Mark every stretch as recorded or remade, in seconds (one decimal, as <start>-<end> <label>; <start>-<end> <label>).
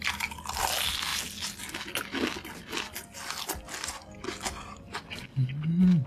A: 0.0-6.1 recorded